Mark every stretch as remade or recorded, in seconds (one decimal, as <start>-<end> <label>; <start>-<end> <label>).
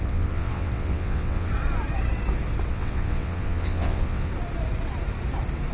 0.0-1.5 remade; 1.5-2.7 recorded; 2.7-4.3 remade; 4.3-5.7 recorded